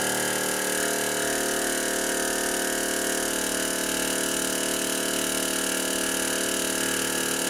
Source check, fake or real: real